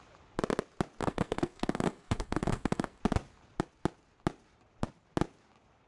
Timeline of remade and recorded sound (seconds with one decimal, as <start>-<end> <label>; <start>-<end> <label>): 0.0-1.0 recorded; 1.0-3.0 remade; 3.0-5.9 recorded